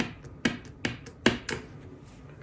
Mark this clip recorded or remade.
recorded